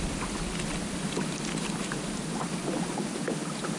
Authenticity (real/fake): real